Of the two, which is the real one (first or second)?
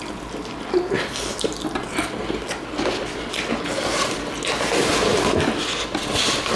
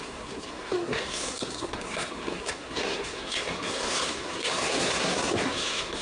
first